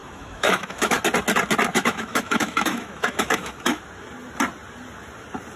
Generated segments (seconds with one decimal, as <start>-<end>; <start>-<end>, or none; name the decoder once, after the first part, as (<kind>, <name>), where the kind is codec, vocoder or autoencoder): 0.0-1.0 (autoencoder, DAC-VAE); 1.7-3.8